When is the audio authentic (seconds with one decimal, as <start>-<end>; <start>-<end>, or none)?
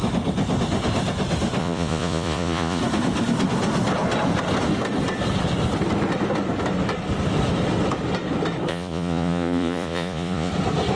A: 0.0-1.6; 2.8-8.7; 10.5-11.0